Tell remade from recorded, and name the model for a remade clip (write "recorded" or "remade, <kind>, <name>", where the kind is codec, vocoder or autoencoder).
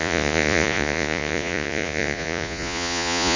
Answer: remade, vocoder, Vocos